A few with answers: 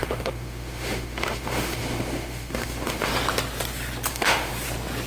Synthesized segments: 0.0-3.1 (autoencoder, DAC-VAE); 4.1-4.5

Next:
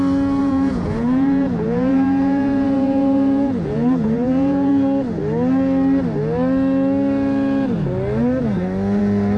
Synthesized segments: 0.4-4.7 (vocoder, Vocos)